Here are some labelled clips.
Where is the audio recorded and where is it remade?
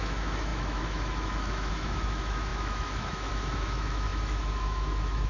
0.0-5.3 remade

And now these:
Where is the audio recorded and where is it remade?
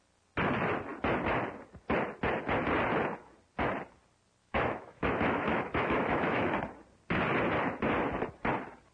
0.0-4.4 recorded; 4.4-6.5 remade; 6.5-8.9 recorded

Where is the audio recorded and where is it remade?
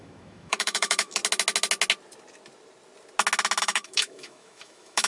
0.0-1.2 remade; 1.2-3.6 recorded; 3.6-5.1 remade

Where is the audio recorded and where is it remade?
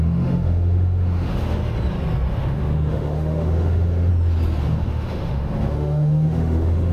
0.0-1.6 remade; 1.6-2.3 recorded; 2.3-4.1 remade; 4.1-4.6 recorded; 4.6-6.9 remade